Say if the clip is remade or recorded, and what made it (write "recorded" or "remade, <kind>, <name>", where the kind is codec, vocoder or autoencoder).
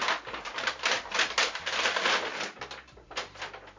recorded